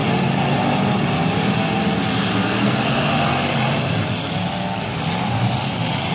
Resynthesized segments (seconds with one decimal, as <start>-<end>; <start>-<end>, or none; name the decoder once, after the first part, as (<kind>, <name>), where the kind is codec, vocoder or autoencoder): 2.4-3.1 (codec, SNAC)

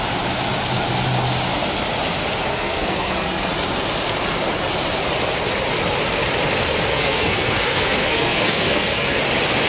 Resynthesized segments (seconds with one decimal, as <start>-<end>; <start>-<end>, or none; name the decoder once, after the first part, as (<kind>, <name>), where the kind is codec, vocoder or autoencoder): 2.5-3.5 (codec, SNAC); 6.9-9.2

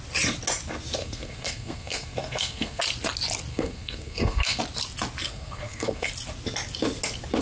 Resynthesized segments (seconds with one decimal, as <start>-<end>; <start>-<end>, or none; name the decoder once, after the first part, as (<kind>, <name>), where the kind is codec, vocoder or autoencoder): 1.0-2.8 (codec, SNAC); 3.5-4.6; 5.3-6.1

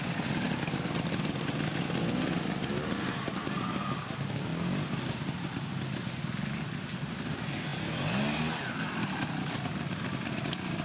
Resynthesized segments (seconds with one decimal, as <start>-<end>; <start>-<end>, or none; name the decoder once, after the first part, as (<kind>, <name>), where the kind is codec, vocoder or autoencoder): none

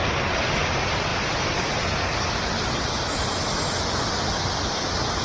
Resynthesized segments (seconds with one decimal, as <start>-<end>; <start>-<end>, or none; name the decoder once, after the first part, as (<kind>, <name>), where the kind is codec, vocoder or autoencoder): none

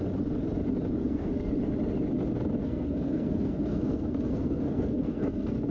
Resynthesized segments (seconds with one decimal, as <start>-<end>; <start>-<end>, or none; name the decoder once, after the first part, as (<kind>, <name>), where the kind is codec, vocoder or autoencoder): 1.0-1.5 (codec, SNAC); 2.6-5.7

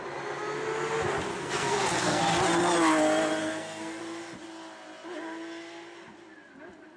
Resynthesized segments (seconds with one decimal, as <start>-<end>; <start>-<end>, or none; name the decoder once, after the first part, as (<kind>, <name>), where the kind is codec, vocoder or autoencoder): 1.3-2.2 (codec, SNAC); 3.4-4.0